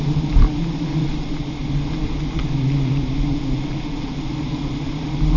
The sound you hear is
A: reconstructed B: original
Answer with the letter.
B